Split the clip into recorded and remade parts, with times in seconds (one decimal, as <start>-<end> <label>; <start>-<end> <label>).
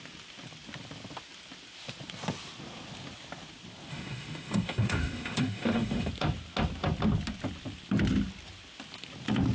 0.0-3.9 recorded; 3.9-6.1 remade; 6.1-9.5 recorded